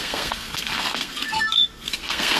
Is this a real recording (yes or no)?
no